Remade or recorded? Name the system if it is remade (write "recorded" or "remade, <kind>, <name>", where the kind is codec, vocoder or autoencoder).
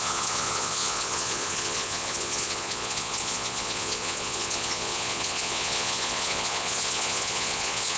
remade, vocoder, Vocos